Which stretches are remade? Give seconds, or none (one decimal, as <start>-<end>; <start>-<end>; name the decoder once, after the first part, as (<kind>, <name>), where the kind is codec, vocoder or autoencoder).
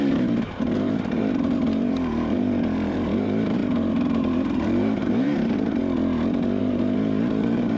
0.0-5.8 (vocoder, BigVGAN v2); 6.6-7.8